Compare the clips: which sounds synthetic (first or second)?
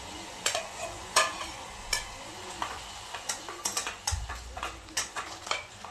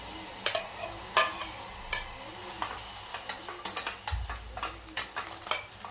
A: first